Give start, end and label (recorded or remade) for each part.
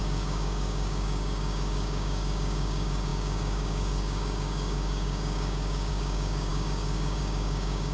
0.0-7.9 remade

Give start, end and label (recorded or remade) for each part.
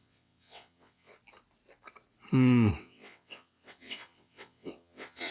0.0-1.1 remade; 1.1-2.8 recorded; 2.8-5.3 remade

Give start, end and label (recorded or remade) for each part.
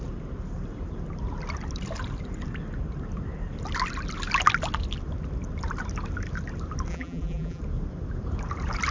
0.0-6.9 recorded; 6.9-7.6 remade; 7.6-8.9 recorded